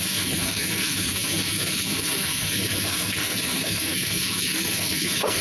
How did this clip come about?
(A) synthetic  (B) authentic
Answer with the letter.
A